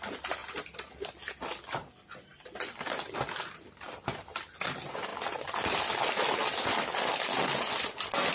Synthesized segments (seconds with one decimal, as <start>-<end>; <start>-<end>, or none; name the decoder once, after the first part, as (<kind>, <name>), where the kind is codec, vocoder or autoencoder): 2.3-4.3 (vocoder, BigVGAN v2); 5.1-6.8